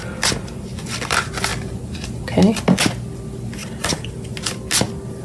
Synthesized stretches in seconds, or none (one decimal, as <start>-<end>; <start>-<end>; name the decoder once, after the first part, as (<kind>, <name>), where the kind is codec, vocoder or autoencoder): 3.6-4.3 (vocoder, BigVGAN v2)